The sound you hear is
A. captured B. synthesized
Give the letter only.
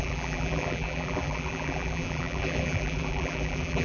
B